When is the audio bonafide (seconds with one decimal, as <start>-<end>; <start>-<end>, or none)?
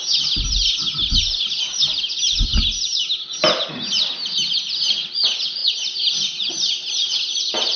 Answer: 0.0-7.8